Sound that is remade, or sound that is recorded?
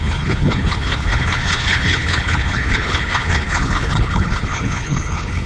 remade